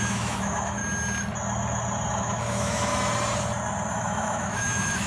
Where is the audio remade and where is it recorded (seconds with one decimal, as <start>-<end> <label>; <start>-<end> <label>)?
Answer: 0.0-0.8 remade; 0.8-2.1 recorded; 2.1-2.9 remade; 2.9-3.9 recorded; 3.9-5.1 remade